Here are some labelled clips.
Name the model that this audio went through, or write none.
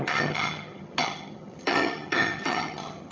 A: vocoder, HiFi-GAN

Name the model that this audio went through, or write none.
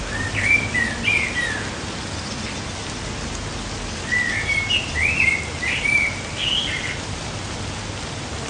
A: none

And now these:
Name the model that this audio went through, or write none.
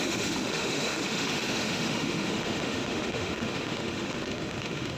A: autoencoder, DAC-VAE